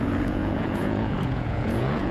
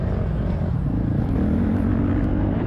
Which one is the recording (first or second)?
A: second